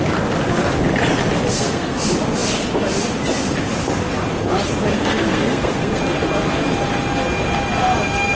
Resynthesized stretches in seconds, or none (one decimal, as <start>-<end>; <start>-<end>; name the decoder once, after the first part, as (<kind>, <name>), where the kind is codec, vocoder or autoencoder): 1.5-2.0 (codec, SNAC); 4.9-6.0